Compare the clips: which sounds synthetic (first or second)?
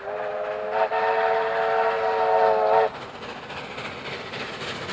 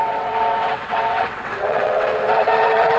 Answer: second